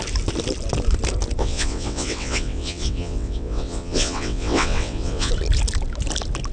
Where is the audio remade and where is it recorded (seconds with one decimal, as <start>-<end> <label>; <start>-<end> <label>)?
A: 0.0-1.4 recorded; 1.4-5.3 remade; 5.3-6.5 recorded